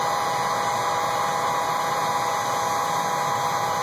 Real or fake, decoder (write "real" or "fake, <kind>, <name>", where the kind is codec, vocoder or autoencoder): real